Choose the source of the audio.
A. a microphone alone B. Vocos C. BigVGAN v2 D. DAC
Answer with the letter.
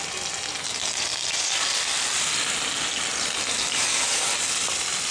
A